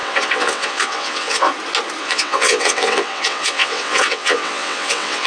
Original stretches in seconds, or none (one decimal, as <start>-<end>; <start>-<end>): 1.5-2.0